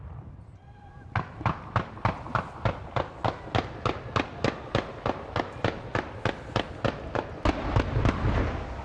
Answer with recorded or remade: recorded